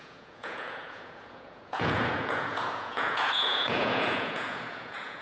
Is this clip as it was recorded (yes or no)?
no